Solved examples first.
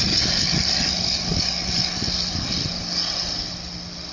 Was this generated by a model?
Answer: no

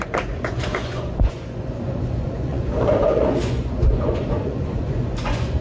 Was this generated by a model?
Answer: yes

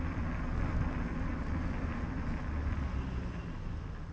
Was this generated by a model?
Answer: no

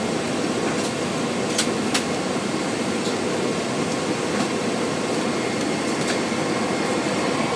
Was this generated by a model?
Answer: no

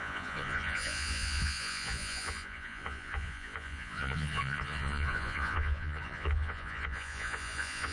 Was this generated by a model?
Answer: yes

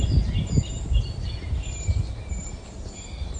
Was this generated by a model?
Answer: no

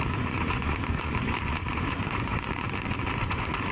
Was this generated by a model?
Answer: yes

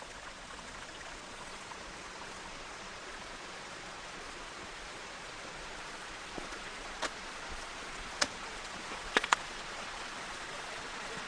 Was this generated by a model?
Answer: yes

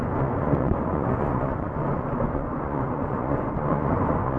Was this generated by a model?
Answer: yes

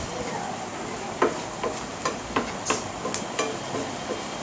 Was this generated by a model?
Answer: no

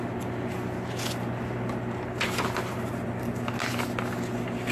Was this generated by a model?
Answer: no